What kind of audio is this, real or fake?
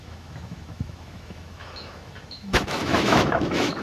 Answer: fake